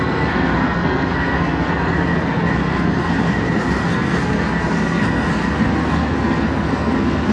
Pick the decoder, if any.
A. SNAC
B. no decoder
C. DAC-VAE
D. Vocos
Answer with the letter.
A